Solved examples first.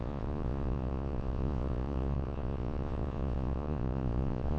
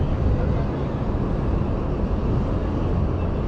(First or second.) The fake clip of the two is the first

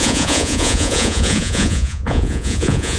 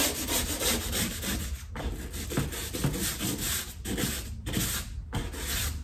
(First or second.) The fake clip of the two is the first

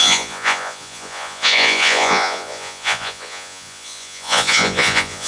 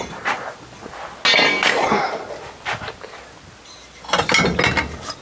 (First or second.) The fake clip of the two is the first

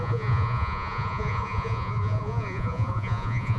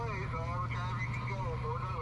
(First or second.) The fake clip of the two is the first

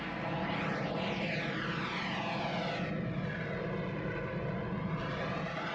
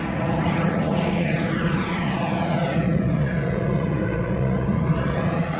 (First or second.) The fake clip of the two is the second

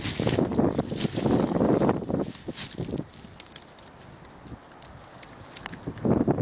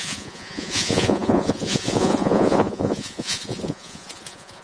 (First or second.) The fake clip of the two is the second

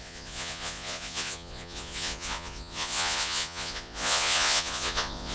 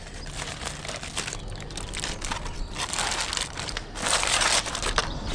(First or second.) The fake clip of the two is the first